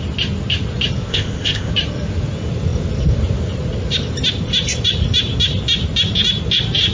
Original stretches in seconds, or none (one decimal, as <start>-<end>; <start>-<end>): 0.0-1.1; 1.7-6.9